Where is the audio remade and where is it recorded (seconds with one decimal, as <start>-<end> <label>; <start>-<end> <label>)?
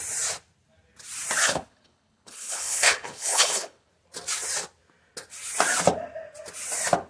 0.0-1.4 recorded; 1.4-3.9 remade; 3.9-7.1 recorded